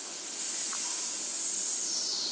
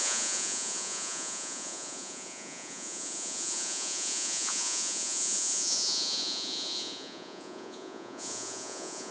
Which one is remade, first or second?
second